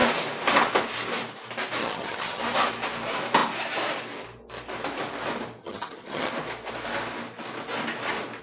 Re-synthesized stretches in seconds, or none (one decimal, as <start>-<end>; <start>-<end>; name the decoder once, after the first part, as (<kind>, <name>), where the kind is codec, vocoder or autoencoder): 1.8-2.4 (vocoder, HiFi-GAN); 5.6-6.3